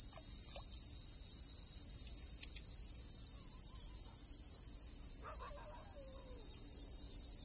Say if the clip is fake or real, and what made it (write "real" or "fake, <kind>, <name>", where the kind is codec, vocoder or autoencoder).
real